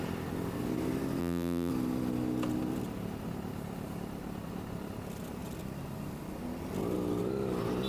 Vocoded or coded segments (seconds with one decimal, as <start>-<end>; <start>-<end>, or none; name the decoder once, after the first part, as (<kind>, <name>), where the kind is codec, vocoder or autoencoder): 1.2-1.7 (vocoder, BigVGAN v2)